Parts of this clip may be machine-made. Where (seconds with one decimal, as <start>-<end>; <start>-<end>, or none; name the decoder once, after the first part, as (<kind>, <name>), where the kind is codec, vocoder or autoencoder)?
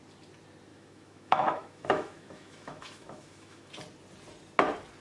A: 0.7-3.7 (autoencoder, DAC-VAE)